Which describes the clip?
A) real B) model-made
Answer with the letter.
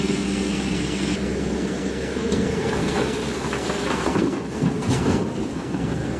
B